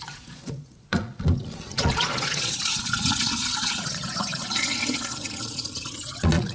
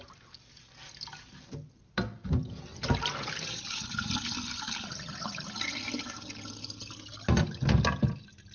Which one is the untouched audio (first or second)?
second